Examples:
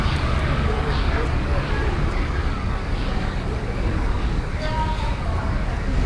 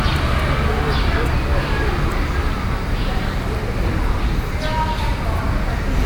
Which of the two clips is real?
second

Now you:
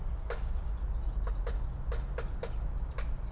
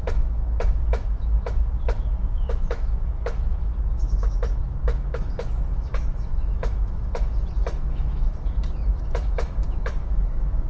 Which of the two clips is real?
first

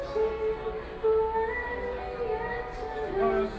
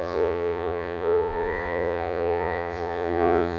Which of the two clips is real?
first